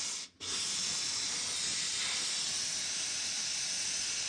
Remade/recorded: recorded